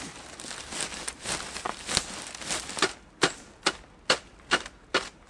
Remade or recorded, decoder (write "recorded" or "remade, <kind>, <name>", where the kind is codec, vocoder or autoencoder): recorded